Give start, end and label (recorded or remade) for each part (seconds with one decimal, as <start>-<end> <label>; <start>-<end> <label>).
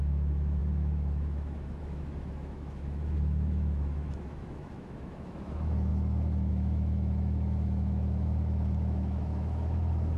0.0-10.2 remade